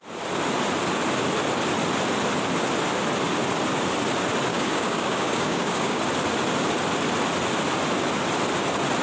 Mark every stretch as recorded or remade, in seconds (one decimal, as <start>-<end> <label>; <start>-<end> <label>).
0.0-4.5 recorded; 4.5-6.0 remade; 6.0-9.0 recorded